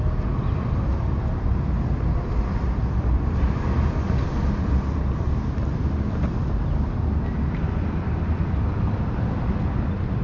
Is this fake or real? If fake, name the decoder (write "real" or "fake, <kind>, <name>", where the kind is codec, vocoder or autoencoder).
real